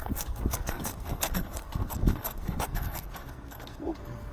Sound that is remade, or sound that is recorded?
remade